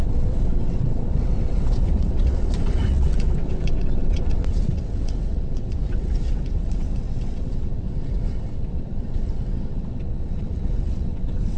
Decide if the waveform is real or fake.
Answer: fake